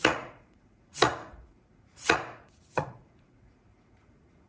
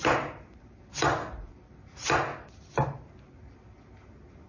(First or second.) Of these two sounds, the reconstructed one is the first